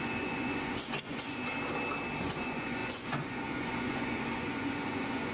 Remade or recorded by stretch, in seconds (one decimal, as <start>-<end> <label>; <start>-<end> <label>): 0.0-1.5 remade; 1.5-2.2 recorded; 2.2-5.3 remade